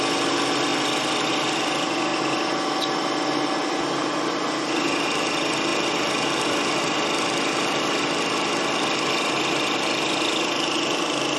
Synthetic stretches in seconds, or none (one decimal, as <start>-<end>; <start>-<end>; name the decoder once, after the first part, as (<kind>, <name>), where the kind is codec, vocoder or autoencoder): 5.7-8.0 (vocoder, BigVGAN v2)